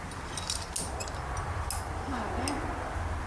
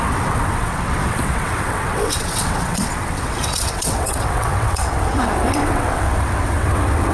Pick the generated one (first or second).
second